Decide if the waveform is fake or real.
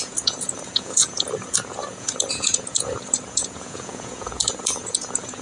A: fake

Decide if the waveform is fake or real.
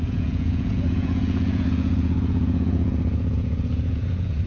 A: fake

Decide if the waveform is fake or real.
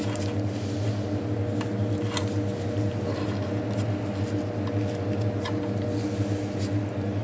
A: real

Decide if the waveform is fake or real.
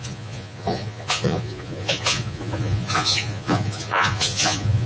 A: fake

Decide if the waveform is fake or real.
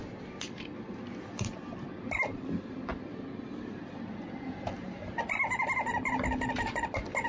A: real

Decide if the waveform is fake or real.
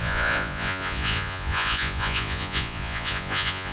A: fake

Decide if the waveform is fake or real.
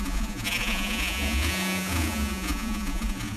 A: fake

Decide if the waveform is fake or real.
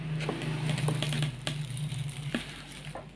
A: real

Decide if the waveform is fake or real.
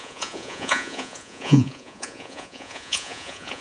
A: fake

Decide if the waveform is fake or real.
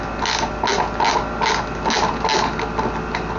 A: real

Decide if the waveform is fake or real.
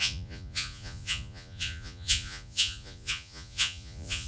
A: fake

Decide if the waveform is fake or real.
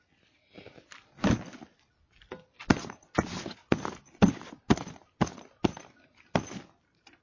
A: real